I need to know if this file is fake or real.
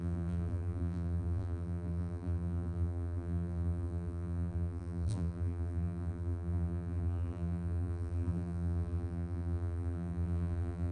fake